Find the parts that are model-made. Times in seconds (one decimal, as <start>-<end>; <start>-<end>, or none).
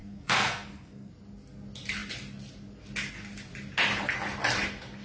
0.0-1.1